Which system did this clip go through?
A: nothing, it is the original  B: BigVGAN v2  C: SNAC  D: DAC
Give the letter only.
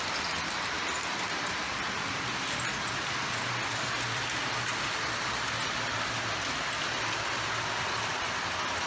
A